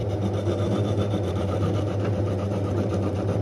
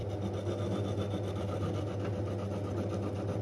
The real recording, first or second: second